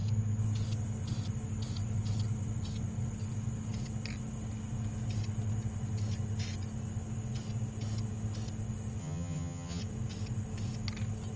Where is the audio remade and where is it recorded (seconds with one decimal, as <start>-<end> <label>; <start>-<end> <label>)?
0.0-9.0 recorded; 9.0-9.8 remade; 9.8-11.4 recorded

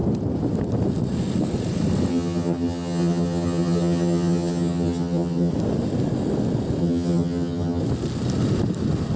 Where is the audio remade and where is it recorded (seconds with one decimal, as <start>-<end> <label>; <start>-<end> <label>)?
0.0-2.1 recorded; 2.1-5.5 remade; 5.5-6.8 recorded; 6.8-7.8 remade; 7.8-9.2 recorded

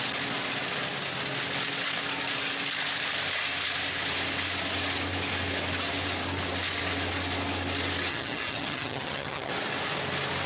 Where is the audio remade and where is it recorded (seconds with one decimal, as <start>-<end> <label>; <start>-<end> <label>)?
0.0-8.1 recorded; 8.1-9.5 remade; 9.5-10.5 recorded

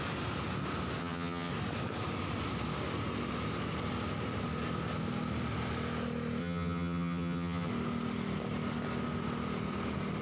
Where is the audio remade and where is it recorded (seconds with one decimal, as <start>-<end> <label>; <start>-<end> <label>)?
0.0-1.0 recorded; 1.0-1.5 remade; 1.5-6.4 recorded; 6.4-7.7 remade; 7.7-10.2 recorded